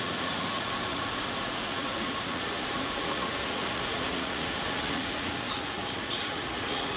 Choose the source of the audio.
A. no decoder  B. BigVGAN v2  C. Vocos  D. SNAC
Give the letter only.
C